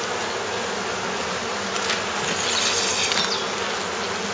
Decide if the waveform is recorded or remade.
recorded